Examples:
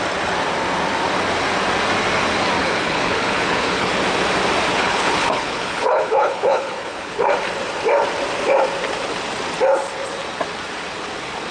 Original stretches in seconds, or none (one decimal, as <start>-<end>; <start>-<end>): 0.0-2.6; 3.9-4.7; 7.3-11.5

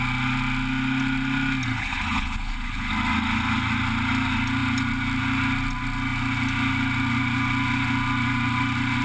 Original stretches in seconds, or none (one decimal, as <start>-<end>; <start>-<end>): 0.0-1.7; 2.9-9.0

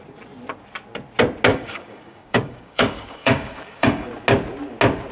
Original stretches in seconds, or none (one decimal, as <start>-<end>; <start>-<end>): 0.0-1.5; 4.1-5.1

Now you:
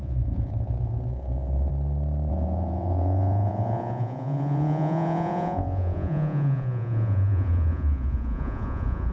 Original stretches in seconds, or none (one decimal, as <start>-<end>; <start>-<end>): 1.7-2.3